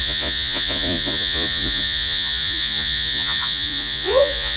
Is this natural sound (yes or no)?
no